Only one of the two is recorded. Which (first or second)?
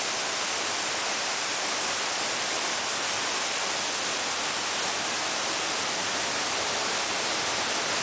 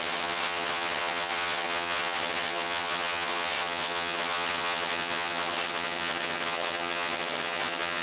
first